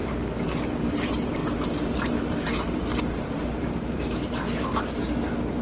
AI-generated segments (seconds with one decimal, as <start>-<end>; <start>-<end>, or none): 0.9-5.6